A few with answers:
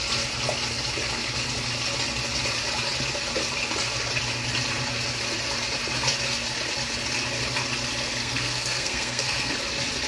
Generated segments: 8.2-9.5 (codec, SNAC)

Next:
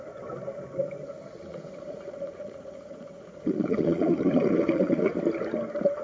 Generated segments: 1.5-5.1 (vocoder, Vocos)

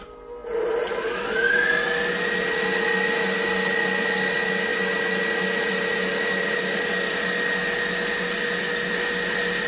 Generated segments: none

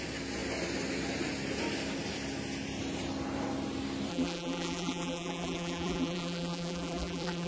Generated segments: 4.1-7.5 (vocoder, BigVGAN v2)

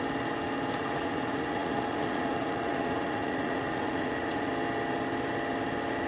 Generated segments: 0.8-4.5 (vocoder, Vocos)